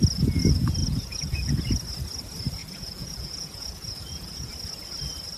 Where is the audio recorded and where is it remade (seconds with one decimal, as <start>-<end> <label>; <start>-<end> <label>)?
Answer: 0.0-0.8 recorded; 0.8-1.5 remade; 1.5-2.6 recorded; 2.6-4.5 remade; 4.5-5.4 recorded